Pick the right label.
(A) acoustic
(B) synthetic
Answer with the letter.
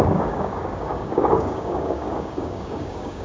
B